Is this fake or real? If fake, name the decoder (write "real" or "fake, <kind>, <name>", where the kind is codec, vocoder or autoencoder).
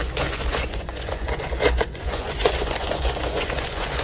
fake, vocoder, Vocos